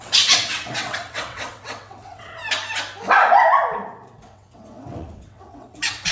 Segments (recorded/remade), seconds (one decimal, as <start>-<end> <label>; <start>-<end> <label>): 0.0-2.4 remade; 2.4-4.1 recorded; 4.1-6.1 remade